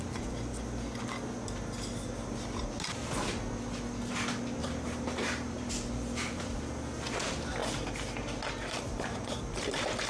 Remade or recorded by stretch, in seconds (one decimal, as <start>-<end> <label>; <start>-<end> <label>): 0.0-4.6 recorded; 4.6-5.7 remade; 5.7-10.1 recorded